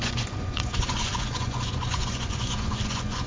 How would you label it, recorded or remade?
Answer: remade